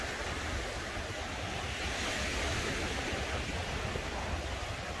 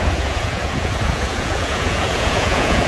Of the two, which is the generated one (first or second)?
second